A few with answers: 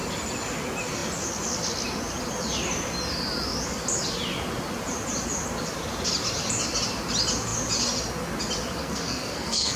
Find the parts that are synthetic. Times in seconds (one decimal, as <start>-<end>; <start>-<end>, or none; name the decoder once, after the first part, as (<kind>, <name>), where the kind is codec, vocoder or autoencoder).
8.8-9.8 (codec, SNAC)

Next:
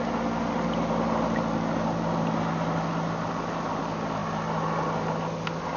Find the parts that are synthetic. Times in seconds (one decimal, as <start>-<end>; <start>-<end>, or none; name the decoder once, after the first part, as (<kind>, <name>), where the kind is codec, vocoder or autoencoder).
none

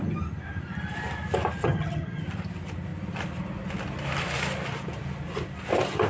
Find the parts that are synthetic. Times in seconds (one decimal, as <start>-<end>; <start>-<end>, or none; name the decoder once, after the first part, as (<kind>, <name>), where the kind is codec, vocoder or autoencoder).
1.6-2.2 (vocoder, HiFi-GAN)

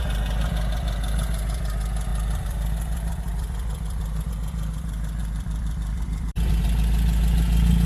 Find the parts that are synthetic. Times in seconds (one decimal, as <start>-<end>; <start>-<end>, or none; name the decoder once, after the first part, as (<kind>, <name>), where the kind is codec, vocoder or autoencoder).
2.1-4.3 (vocoder, BigVGAN v2); 5.2-6.5